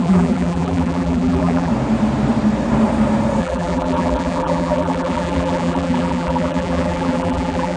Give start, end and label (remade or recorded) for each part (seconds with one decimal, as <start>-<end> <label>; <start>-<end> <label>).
0.0-1.7 remade; 1.7-3.4 recorded; 3.4-7.8 remade